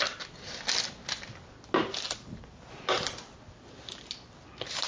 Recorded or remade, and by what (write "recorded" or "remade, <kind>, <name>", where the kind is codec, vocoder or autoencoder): recorded